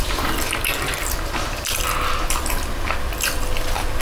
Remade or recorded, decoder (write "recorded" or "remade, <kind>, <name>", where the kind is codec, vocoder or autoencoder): recorded